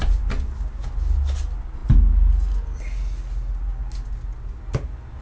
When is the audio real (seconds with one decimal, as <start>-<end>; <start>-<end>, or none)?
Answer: 0.0-5.2